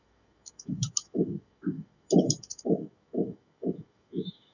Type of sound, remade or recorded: remade